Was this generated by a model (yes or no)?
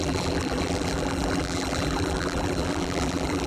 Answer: yes